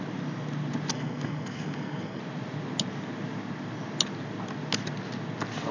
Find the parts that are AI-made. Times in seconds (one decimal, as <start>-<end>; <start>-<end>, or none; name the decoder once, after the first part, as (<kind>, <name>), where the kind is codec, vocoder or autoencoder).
0.9-2.2 (codec, SNAC)